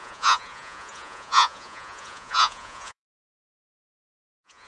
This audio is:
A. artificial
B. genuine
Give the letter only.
A